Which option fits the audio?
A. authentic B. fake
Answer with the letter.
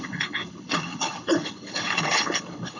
B